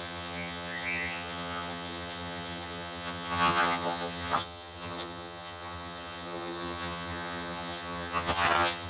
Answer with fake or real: fake